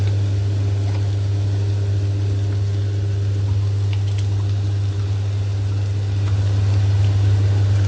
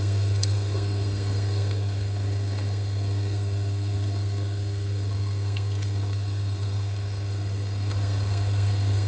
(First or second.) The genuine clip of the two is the first